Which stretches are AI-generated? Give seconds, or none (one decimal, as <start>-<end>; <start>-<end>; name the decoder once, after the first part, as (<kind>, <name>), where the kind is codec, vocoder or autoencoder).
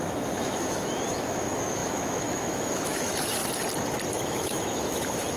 0.0-3.4 (autoencoder, DAC-VAE); 4.1-5.4